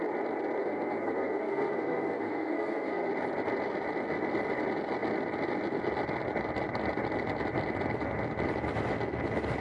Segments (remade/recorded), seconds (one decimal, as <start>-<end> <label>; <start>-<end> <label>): 0.0-0.6 recorded; 0.6-3.1 remade; 3.1-9.6 recorded